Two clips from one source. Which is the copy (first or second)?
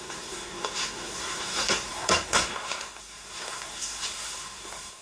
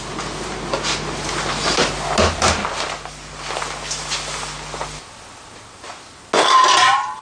first